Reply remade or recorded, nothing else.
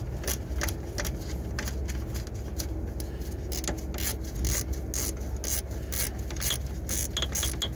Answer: recorded